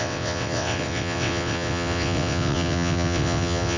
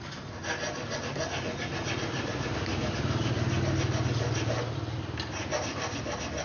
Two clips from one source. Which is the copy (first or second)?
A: first